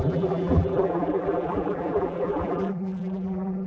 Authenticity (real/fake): fake